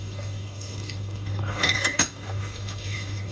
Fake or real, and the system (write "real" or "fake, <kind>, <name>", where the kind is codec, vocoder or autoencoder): fake, codec, DAC